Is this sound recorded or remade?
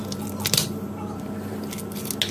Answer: recorded